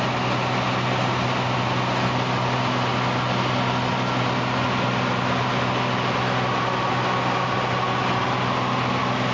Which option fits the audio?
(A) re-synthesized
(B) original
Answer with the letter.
B